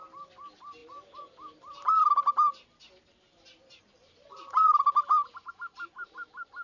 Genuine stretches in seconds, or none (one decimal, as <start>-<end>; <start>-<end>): none